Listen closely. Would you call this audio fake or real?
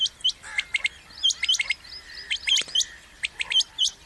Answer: real